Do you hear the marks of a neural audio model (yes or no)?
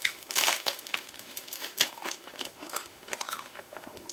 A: yes